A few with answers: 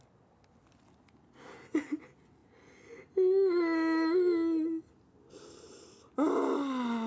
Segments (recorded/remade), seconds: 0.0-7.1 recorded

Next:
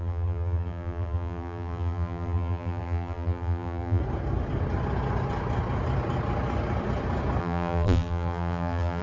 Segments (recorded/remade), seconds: 0.0-4.0 remade; 4.0-7.4 recorded; 7.4-9.0 remade

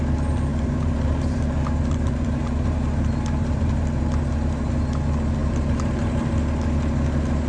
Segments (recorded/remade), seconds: 0.0-0.5 recorded; 0.5-4.7 remade; 4.7-5.4 recorded; 5.4-6.3 remade; 6.3-7.5 recorded

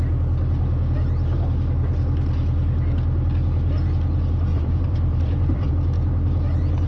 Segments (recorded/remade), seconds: 0.0-4.5 recorded; 4.5-5.7 remade; 5.7-6.9 recorded

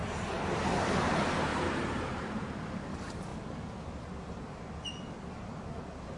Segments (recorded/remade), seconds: 0.0-1.1 remade; 1.1-1.5 recorded; 1.5-2.4 remade; 2.4-6.2 recorded

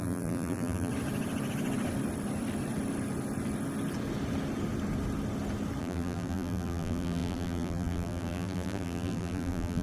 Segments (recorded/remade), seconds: 0.0-0.9 remade; 0.9-5.8 recorded; 5.8-9.8 remade

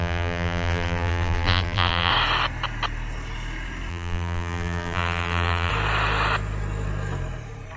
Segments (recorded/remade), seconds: 0.0-2.1 remade; 2.1-3.9 recorded; 3.9-5.7 remade; 5.7-7.8 recorded